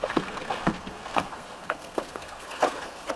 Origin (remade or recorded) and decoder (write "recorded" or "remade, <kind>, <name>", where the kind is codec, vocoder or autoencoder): remade, codec, SNAC